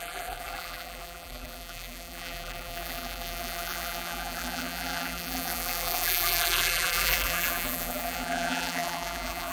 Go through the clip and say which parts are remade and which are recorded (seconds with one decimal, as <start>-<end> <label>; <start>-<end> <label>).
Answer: 0.0-9.5 remade